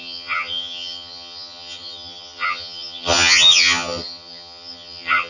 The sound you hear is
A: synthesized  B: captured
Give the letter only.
A